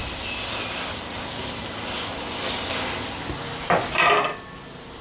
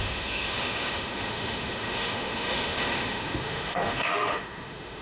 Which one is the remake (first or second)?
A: second